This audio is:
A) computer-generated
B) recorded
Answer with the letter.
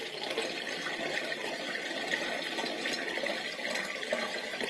B